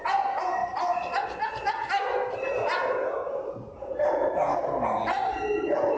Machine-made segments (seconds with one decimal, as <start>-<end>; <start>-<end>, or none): none